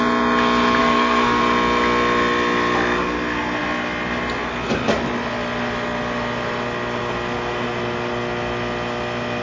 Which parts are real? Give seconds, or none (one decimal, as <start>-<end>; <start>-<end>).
0.0-0.8; 1.4-9.4